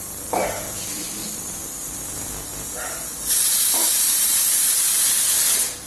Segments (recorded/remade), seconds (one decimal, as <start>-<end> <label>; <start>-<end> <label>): 0.0-3.8 recorded; 3.8-4.9 remade; 4.9-5.9 recorded